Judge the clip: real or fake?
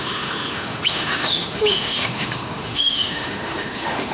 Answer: fake